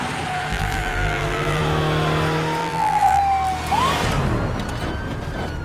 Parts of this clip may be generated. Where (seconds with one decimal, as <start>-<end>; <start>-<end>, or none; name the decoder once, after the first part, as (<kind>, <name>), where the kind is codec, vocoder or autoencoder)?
0.5-1.6 (vocoder, BigVGAN v2); 2.6-3.2